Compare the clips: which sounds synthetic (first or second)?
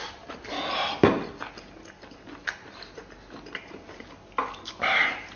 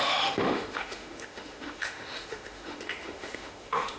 second